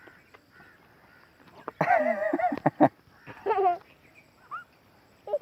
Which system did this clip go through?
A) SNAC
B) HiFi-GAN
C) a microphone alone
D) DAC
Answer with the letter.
C